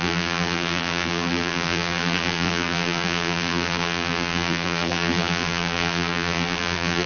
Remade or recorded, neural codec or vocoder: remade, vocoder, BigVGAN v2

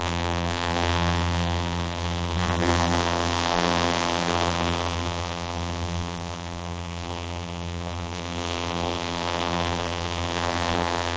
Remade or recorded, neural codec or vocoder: remade, vocoder, BigVGAN v2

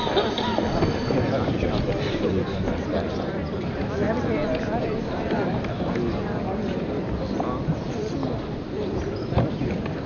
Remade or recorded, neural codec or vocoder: remade, vocoder, BigVGAN v2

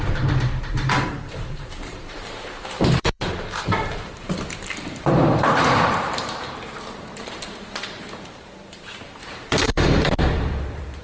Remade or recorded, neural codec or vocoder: remade, vocoder, BigVGAN v2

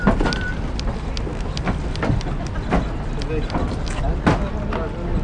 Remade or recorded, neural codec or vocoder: recorded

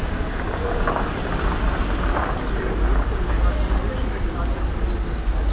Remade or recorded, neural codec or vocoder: recorded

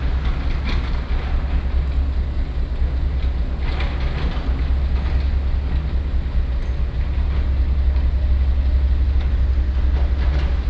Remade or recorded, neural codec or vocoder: recorded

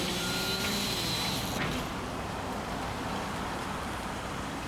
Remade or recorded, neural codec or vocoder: remade, vocoder, BigVGAN v2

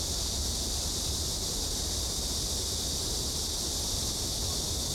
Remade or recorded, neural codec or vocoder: recorded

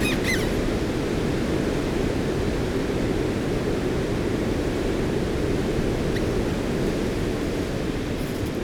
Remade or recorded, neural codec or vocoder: recorded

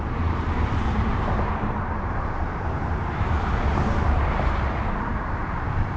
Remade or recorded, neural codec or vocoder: remade, vocoder, BigVGAN v2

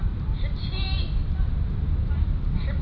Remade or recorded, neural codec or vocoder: recorded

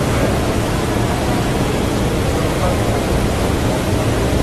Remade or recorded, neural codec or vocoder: recorded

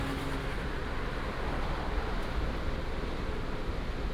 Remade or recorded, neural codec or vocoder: recorded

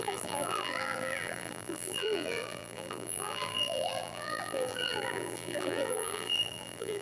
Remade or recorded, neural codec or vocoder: remade, vocoder, BigVGAN v2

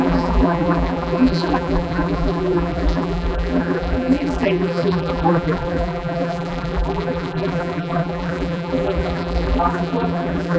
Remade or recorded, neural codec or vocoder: remade, vocoder, BigVGAN v2